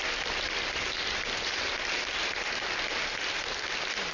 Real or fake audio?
real